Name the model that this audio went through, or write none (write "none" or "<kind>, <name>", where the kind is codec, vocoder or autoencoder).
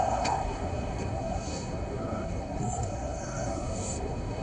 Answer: codec, SNAC